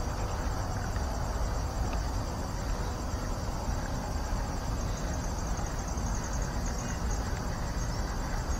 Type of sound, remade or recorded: recorded